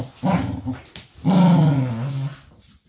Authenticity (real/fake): real